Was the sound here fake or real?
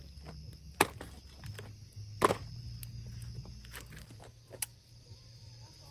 real